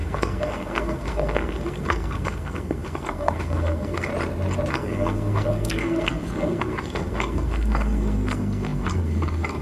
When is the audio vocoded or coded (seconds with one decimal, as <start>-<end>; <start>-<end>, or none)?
0.0-4.1; 4.7-9.6